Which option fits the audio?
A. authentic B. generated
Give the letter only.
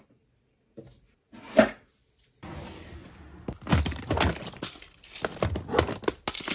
A